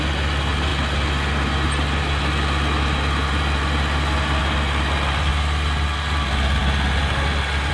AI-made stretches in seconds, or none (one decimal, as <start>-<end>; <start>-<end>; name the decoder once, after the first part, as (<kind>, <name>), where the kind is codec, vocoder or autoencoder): none